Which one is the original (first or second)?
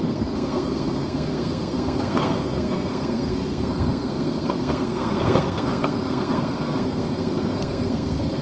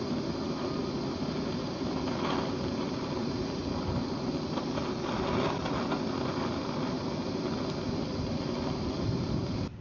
second